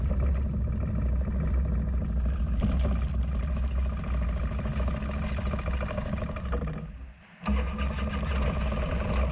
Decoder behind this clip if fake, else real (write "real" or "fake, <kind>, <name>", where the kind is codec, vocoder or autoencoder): real